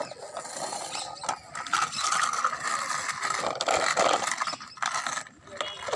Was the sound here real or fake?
real